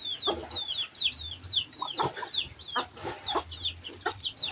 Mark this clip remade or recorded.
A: recorded